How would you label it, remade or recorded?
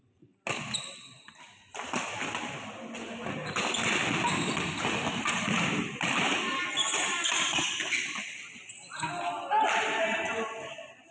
recorded